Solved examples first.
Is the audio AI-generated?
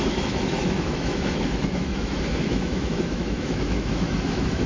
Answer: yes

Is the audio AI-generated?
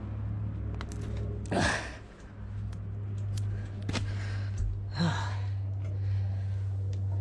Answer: no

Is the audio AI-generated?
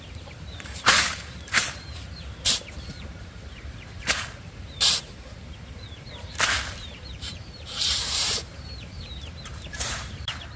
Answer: yes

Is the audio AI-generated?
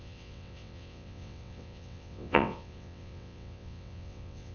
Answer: yes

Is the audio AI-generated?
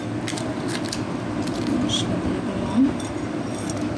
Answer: no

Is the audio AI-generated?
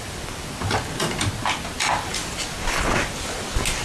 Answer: yes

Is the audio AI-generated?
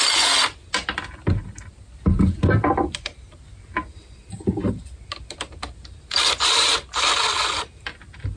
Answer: no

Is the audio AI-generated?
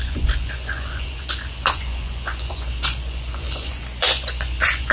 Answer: yes